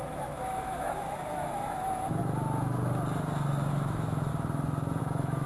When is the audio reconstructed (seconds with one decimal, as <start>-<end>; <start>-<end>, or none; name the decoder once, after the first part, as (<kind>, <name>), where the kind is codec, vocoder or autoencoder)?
0.0-2.2 (autoencoder, DAC-VAE); 3.7-4.3; 5.0-5.5